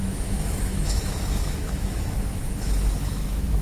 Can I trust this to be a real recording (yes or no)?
no